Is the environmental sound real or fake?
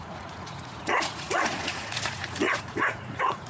fake